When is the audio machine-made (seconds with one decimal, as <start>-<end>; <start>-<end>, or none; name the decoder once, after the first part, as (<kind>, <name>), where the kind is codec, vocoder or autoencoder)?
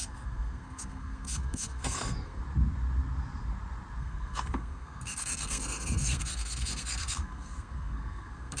0.0-2.4 (codec, SNAC); 4.0-8.6